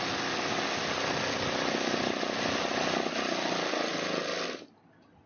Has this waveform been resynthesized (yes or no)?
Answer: no